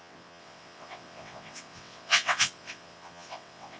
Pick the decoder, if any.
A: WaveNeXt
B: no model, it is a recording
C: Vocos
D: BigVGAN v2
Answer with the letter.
A